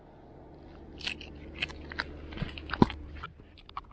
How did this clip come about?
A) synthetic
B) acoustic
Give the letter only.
B